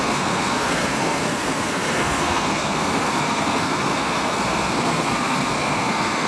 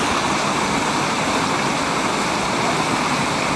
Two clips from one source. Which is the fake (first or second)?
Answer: first